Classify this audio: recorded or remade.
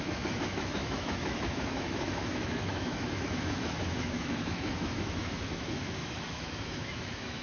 remade